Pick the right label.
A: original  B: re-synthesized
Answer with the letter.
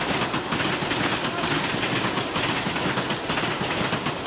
A